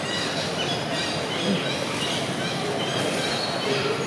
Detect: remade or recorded recorded